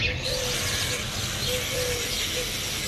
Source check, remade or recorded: recorded